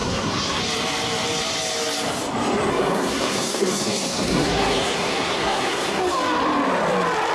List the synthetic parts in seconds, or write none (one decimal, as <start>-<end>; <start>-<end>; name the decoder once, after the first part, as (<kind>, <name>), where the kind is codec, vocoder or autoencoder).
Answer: 0.0-0.6 (codec, SNAC); 2.7-6.0